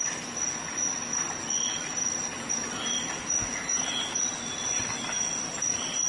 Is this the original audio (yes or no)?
yes